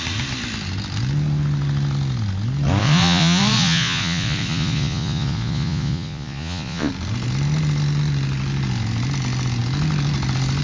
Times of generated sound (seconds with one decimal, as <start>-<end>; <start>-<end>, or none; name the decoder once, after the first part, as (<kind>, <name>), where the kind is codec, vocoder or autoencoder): 2.8-6.9 (vocoder, Vocos)